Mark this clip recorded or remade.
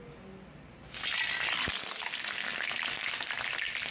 recorded